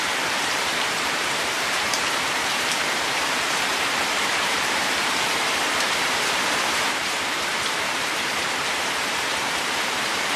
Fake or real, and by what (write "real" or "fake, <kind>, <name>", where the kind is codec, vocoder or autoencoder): fake, vocoder, BigVGAN v2